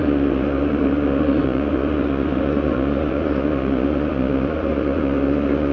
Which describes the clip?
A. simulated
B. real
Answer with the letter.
A